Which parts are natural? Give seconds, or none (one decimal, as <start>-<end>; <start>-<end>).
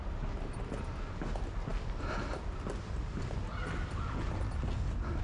0.0-5.2